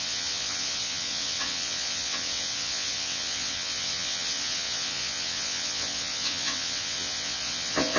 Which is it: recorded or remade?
remade